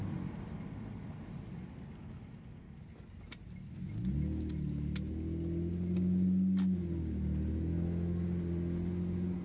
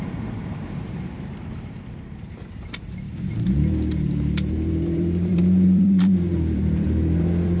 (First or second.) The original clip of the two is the first